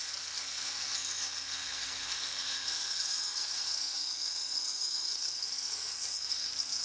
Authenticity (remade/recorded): remade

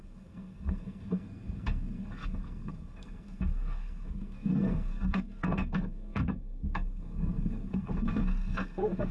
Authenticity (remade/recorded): remade